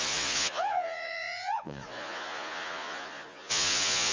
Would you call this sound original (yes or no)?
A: no